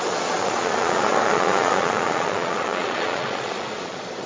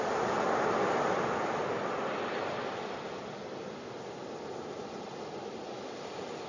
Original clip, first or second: second